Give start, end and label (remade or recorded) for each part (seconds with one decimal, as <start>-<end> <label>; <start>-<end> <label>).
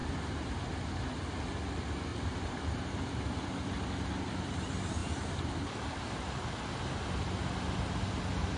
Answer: 0.0-2.1 recorded; 2.1-3.0 remade; 3.0-5.0 recorded; 5.0-6.7 remade; 6.7-8.6 recorded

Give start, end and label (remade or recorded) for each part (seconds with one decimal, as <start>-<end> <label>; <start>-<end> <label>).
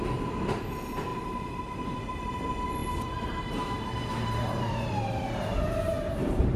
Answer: 0.0-1.1 recorded; 1.1-2.4 remade; 2.4-2.8 recorded; 2.8-6.6 remade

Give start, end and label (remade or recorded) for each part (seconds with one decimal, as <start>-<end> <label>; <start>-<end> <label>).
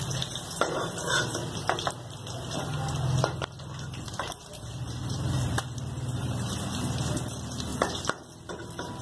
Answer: 0.0-1.4 remade; 1.4-3.8 recorded; 3.8-7.7 remade; 7.7-8.5 recorded; 8.5-9.0 remade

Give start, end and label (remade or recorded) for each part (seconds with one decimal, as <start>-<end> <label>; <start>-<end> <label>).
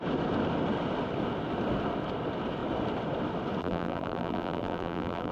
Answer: 0.0-3.6 recorded; 3.6-5.3 remade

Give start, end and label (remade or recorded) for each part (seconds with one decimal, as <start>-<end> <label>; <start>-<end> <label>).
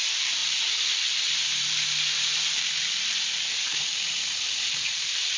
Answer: 0.0-5.4 remade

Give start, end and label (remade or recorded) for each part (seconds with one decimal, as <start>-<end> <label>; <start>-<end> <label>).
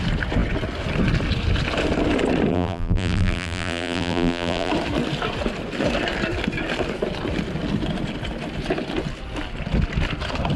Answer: 0.0-2.5 recorded; 2.5-4.7 remade; 4.7-10.6 recorded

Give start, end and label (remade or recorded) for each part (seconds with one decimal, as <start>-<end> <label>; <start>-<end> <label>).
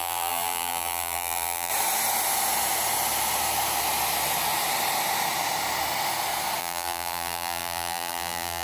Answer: 0.0-1.7 remade; 1.7-6.6 recorded; 6.6-8.6 remade